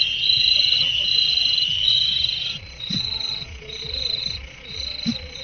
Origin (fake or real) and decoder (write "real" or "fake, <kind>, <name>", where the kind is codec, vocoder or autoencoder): fake, vocoder, Vocos